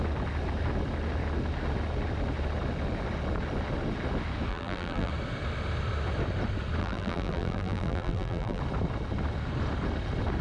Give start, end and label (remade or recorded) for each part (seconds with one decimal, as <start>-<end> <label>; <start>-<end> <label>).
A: 0.0-4.5 recorded; 4.5-5.1 remade; 5.1-6.8 recorded; 6.8-8.6 remade; 8.6-10.4 recorded